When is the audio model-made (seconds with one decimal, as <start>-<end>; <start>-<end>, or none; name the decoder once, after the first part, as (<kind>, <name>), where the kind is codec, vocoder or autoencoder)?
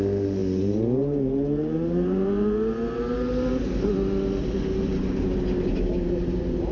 none